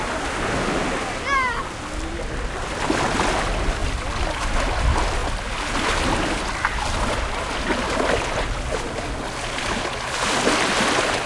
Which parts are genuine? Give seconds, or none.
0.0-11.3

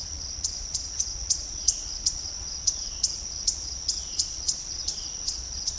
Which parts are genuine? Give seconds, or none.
none

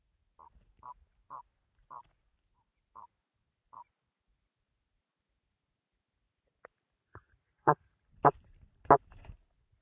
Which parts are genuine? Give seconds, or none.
0.0-7.2; 8.1-9.8

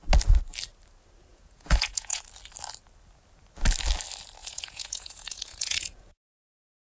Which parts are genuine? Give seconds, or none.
0.0-1.3; 2.2-4.4; 6.0-6.9